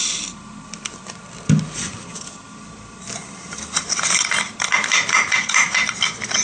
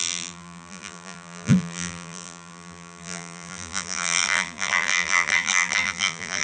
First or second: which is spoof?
second